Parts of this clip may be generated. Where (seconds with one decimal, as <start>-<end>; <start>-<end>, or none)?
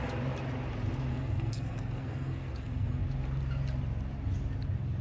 1.1-3.0